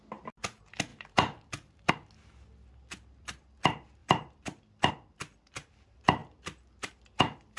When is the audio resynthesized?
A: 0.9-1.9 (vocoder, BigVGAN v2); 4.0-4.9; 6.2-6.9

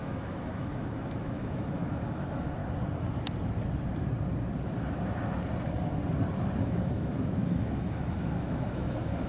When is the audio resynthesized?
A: 0.0-2.6 (autoencoder, DAC-VAE); 6.6-9.3

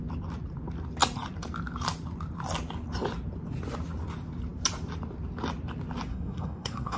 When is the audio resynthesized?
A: 6.1-7.0 (codec, SNAC)

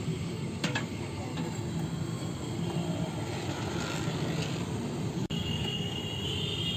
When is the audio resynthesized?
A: 0.0-1.3 (codec, DAC); 5.1-6.0

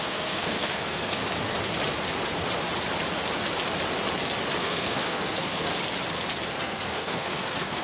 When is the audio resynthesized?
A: 0.0-1.2 (codec, SNAC); 4.6-5.7; 6.6-7.8

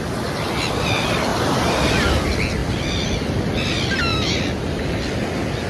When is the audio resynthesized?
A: 1.3-2.1 (vocoder, BigVGAN v2); 2.6-3.1; 4.1-5.7

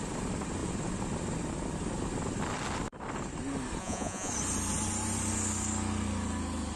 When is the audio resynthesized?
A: 3.8-4.3 (vocoder, Vocos)